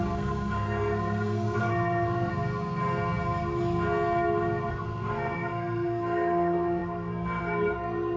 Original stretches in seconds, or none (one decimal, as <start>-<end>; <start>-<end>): 2.3-4.7